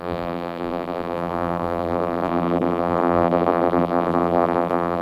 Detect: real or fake fake